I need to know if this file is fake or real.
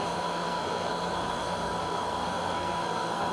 fake